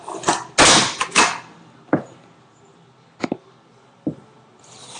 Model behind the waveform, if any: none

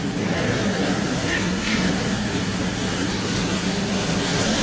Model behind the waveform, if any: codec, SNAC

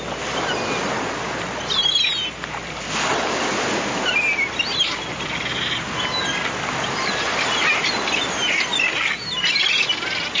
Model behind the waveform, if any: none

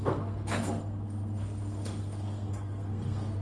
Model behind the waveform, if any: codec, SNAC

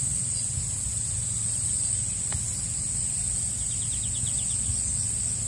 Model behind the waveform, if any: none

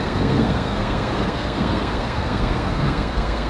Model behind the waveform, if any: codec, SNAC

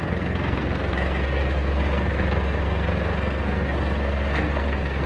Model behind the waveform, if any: codec, SNAC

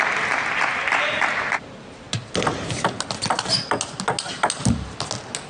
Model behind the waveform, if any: none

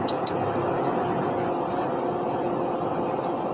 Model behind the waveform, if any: none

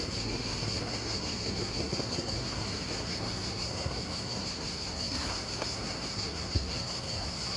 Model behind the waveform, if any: codec, SNAC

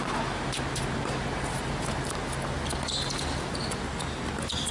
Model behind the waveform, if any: none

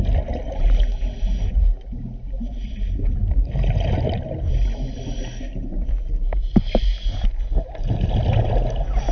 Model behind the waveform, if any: none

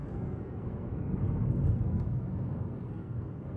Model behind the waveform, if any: codec, SNAC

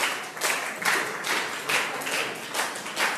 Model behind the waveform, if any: none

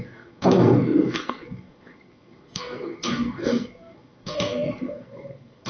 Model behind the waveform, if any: codec, SNAC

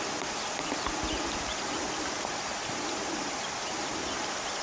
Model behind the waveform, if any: none